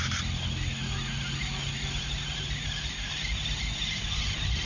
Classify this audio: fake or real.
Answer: real